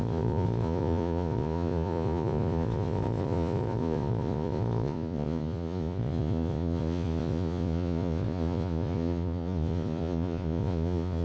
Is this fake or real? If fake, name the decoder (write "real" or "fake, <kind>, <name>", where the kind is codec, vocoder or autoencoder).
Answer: fake, vocoder, Vocos